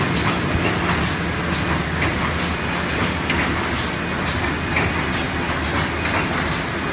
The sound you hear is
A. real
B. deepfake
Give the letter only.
A